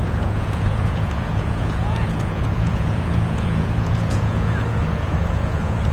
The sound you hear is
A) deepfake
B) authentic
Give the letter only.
A